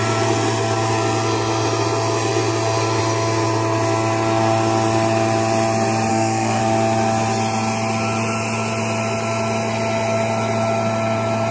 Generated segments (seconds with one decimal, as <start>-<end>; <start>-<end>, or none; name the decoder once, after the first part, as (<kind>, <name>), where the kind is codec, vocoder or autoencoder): 6.1-6.6 (codec, SNAC)

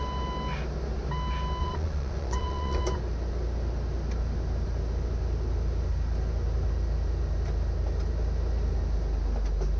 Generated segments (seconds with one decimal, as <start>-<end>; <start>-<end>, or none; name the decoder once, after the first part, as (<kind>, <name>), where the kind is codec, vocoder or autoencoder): 1.6-3.0 (vocoder, Vocos)

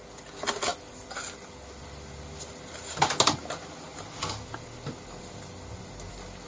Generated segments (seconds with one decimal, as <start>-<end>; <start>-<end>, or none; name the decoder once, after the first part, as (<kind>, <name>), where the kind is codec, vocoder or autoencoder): none

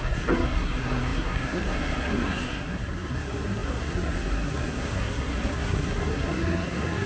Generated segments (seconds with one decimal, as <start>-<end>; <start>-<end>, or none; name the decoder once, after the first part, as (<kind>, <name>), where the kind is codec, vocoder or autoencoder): 0.0-7.1 (codec, SNAC)